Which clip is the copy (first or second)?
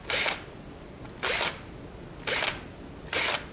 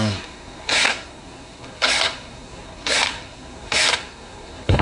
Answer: second